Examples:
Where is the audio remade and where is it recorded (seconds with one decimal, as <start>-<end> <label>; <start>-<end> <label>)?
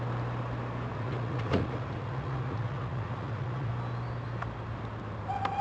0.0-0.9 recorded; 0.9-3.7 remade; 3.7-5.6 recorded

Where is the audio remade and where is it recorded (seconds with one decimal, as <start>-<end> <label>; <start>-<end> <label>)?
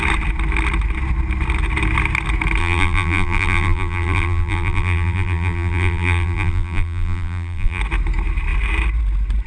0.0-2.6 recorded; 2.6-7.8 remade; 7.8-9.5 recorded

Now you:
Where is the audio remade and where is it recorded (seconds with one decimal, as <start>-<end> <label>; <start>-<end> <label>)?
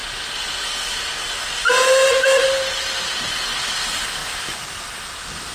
0.0-4.2 recorded; 4.2-5.5 remade